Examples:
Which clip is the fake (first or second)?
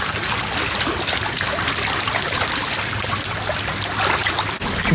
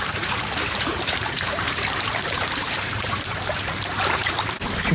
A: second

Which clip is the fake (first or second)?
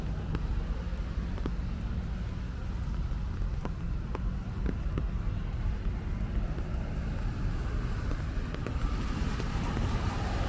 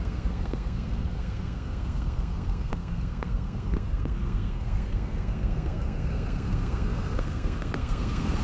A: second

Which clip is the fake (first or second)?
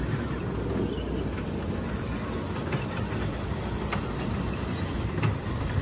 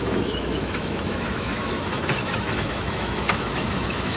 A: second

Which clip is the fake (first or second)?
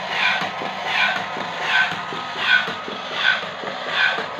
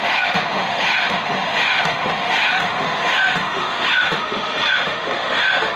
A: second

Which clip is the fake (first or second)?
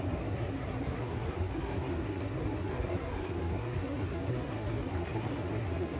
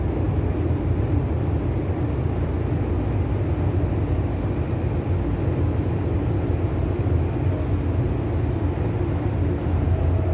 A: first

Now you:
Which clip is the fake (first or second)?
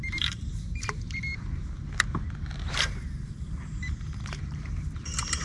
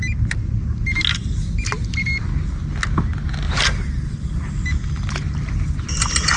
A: first